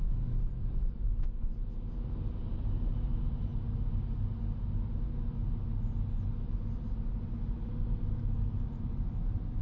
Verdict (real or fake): real